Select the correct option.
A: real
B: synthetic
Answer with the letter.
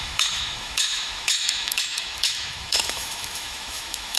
B